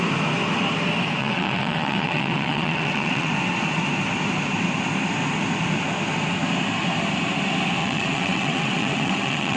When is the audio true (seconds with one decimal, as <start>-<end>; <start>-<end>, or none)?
0.0-1.2; 3.3-7.8